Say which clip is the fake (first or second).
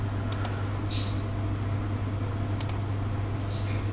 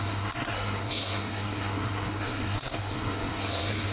second